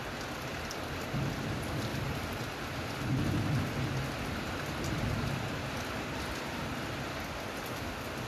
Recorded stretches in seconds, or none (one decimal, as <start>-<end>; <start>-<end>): 0.0-1.9; 5.0-8.3